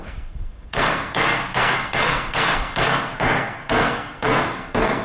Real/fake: fake